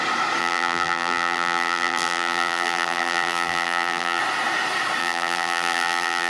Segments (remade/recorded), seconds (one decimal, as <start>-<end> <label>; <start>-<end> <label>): 0.0-0.4 recorded; 0.4-4.2 remade; 4.2-5.0 recorded; 5.0-6.3 remade